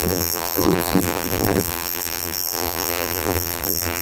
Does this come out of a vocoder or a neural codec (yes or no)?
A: yes